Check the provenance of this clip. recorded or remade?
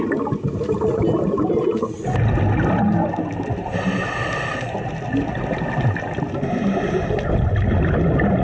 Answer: recorded